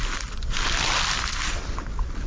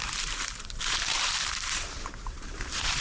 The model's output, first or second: second